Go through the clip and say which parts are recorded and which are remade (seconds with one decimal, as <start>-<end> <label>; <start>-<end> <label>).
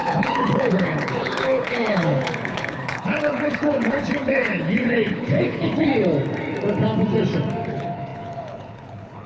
0.0-5.9 remade; 5.9-7.7 recorded; 7.7-9.3 remade